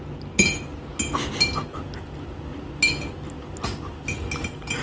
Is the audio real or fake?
real